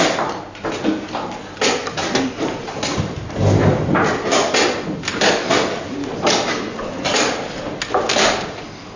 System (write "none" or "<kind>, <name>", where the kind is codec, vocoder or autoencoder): none